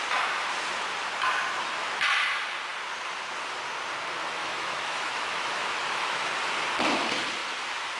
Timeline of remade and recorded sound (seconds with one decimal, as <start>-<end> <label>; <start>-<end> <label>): 0.0-4.4 recorded; 4.4-6.3 remade; 6.3-8.0 recorded